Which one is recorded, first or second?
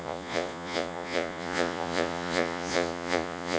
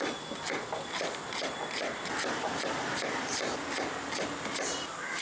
second